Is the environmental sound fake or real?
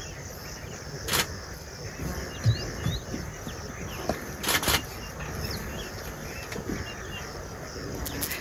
real